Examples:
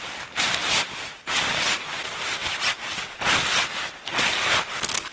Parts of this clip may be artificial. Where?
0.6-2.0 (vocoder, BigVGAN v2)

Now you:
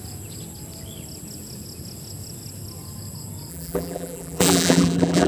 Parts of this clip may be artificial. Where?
3.5-5.3 (vocoder, BigVGAN v2)

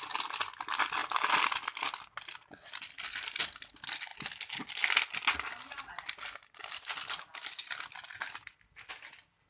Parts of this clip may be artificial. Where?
none